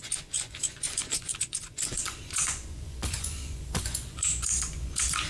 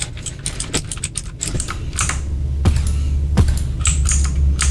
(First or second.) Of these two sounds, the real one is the second